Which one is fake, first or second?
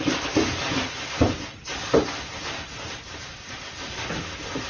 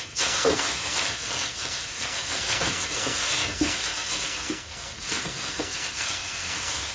second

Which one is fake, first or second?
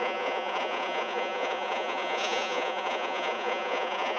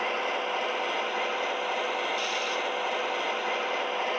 first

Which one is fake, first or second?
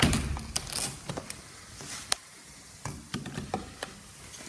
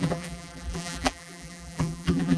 second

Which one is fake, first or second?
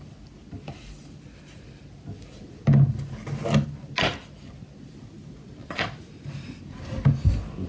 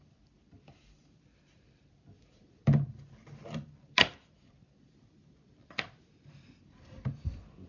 second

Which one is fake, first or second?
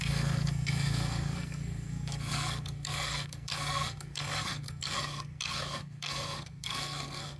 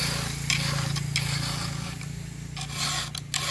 first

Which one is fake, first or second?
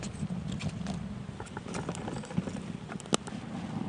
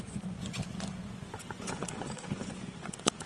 second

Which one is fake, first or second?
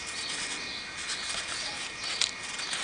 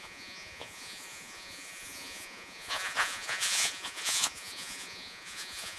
second